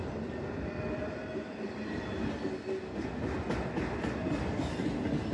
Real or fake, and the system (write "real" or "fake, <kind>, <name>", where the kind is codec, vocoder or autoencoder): real